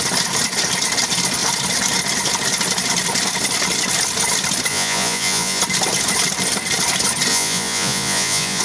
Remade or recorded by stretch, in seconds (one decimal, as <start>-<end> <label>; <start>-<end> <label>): 0.0-4.7 recorded; 4.7-5.6 remade; 5.6-7.3 recorded; 7.3-8.6 remade